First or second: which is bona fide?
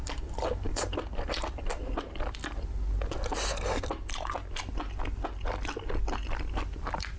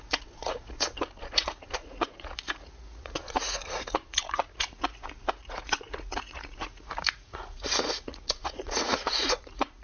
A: first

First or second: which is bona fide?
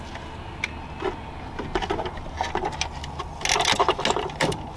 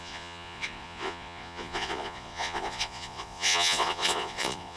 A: first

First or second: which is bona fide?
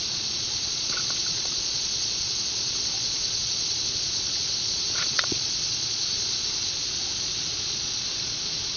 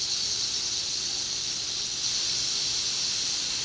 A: second